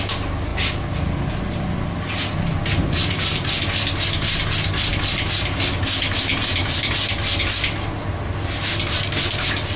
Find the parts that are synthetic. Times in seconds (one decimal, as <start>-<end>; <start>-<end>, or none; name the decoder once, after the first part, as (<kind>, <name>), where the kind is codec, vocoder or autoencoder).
none